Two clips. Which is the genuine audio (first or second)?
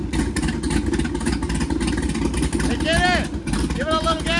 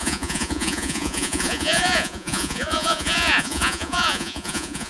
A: first